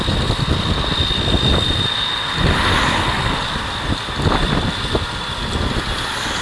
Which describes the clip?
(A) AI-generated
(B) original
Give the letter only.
B